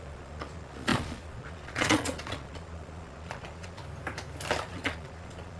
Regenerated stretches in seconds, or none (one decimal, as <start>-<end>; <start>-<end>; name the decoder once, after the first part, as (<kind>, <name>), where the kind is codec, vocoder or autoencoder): 0.0-3.8 (vocoder, Vocos); 4.7-5.6